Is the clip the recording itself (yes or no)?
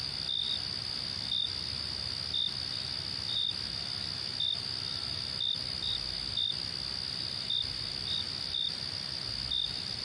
yes